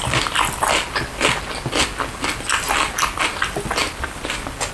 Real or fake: real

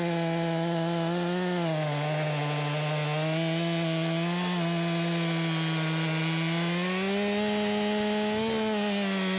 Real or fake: real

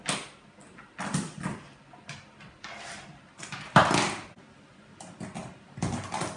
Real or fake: real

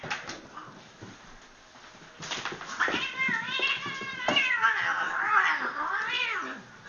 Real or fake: real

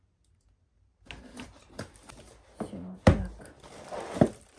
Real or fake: real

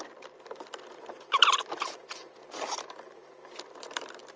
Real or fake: fake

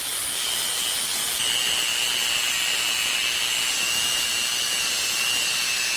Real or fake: real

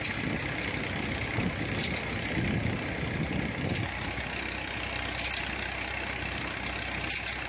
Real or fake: real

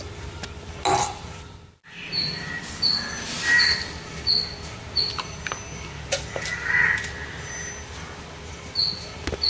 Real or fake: real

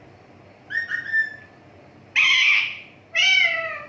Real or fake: real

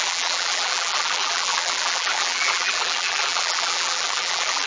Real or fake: fake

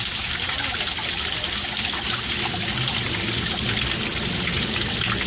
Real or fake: real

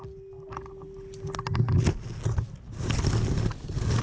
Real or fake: real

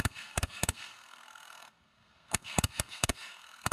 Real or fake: fake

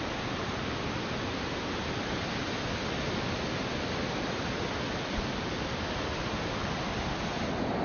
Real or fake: real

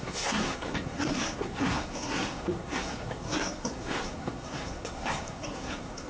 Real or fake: fake